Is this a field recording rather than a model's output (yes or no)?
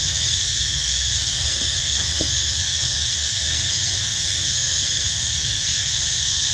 no